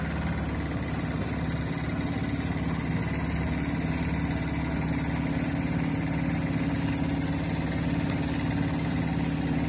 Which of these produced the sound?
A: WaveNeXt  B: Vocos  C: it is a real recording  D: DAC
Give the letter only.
C